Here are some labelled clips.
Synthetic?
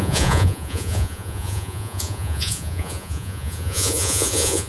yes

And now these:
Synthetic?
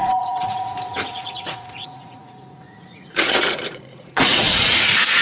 yes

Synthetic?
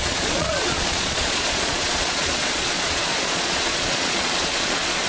yes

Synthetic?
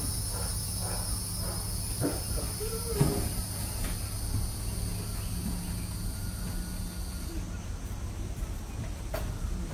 no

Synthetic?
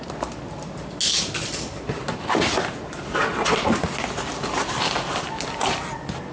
no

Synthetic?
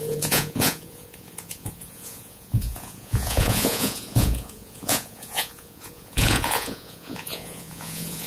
yes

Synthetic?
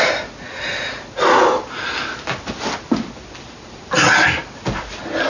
no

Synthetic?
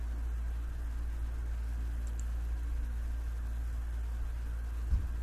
no